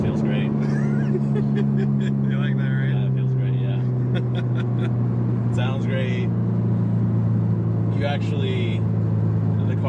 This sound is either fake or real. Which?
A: real